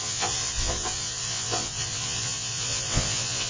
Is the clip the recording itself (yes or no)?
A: no